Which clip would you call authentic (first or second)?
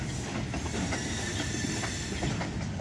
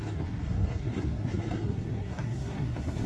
first